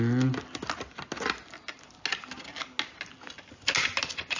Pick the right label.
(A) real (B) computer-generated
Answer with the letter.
A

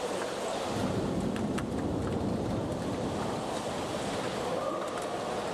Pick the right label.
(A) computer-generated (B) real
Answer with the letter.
B